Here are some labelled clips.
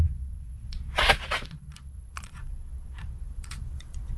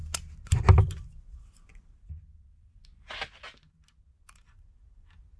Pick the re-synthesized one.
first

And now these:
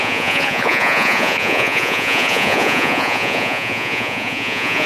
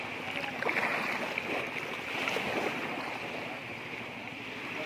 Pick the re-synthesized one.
first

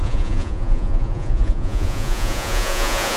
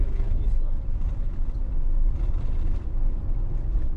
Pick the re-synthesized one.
first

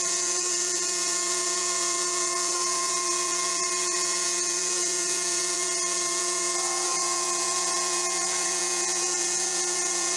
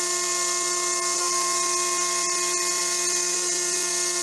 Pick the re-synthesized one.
first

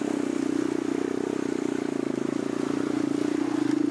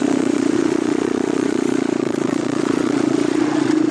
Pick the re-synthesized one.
second